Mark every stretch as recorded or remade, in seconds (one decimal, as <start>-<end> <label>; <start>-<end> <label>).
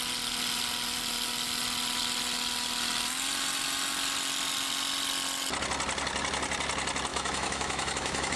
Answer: 0.0-7.1 recorded; 7.1-8.4 remade